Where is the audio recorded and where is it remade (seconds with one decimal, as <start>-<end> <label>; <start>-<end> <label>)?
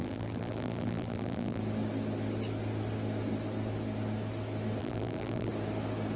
0.0-1.6 remade; 1.6-4.8 recorded; 4.8-5.5 remade; 5.5-6.2 recorded